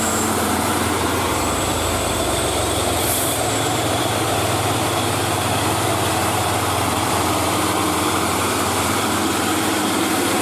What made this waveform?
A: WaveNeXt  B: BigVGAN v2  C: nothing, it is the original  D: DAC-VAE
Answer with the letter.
B